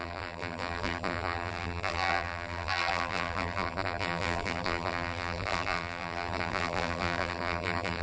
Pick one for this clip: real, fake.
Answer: fake